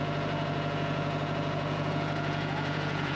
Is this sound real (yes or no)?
no